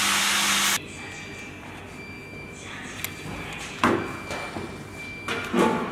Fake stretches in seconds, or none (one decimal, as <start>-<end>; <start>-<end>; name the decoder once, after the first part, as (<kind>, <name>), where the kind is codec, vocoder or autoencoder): none